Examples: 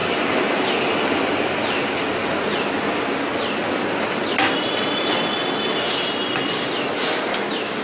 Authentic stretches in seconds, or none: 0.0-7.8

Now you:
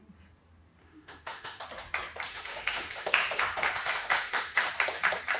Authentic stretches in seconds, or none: 0.0-0.8; 1.6-2.3; 4.7-5.4

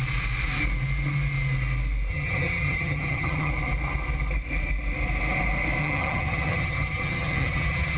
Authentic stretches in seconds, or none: 0.0-2.1; 3.5-5.8

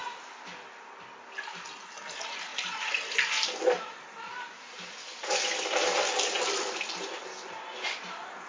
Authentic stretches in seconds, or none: 0.0-8.5

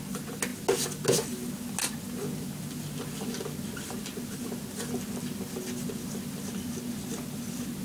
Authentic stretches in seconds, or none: 0.0-7.8

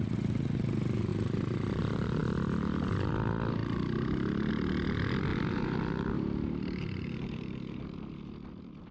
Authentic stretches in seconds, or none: 0.0-5.3; 7.8-8.9

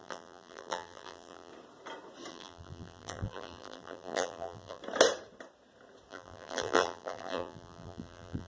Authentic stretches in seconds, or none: 1.5-2.3; 4.8-6.1